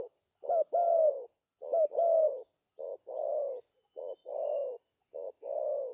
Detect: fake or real real